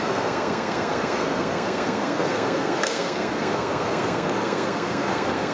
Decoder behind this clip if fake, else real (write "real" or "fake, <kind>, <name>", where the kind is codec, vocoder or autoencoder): fake, codec, SNAC